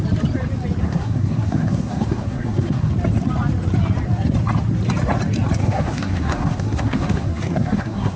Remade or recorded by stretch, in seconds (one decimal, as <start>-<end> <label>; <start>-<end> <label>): 0.0-0.8 recorded; 0.8-2.9 remade; 2.9-5.6 recorded; 5.6-8.2 remade